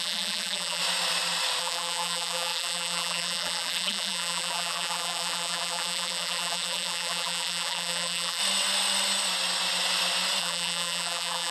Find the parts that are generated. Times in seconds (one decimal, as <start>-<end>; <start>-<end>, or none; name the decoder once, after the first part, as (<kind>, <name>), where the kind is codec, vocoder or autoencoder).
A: 0.0-0.8 (vocoder, BigVGAN v2); 1.6-8.4; 10.4-11.5